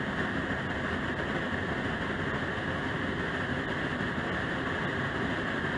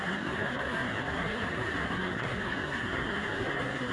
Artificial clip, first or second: second